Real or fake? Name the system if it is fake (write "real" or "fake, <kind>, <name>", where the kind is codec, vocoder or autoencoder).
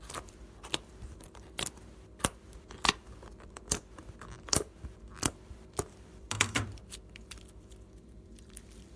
fake, vocoder, BigVGAN v2